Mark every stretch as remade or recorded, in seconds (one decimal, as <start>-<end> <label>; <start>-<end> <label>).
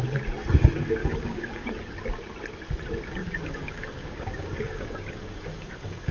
0.0-1.0 recorded; 1.0-1.8 remade; 1.8-3.2 recorded; 3.2-6.1 remade